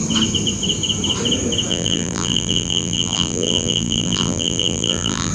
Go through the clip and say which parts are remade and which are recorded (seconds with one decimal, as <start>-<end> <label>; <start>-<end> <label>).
0.0-1.7 recorded; 1.7-5.3 remade